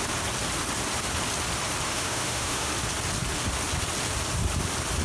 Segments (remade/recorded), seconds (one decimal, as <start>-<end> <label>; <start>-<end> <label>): 0.0-1.9 recorded; 1.9-2.7 remade; 2.7-5.0 recorded